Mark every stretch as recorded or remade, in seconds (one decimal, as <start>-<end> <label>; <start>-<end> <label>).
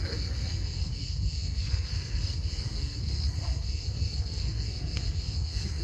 0.0-5.8 remade